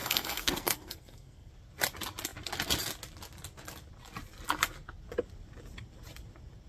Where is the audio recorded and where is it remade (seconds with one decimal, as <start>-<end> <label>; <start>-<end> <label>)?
0.0-1.5 remade; 1.5-6.7 recorded